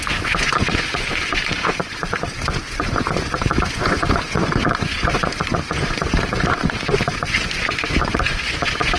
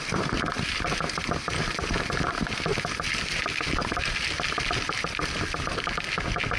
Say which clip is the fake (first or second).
first